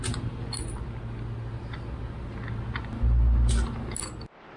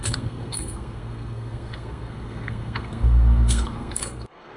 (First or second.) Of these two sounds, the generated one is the second